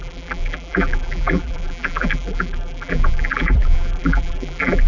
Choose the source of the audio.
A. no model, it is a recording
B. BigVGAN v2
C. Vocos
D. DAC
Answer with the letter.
B